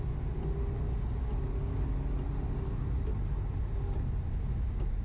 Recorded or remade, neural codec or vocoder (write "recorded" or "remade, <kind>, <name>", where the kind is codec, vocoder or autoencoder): recorded